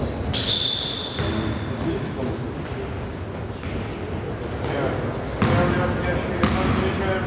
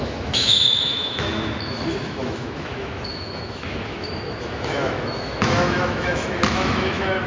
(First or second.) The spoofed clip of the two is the second